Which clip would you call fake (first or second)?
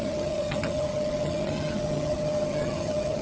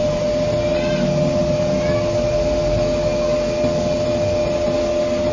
first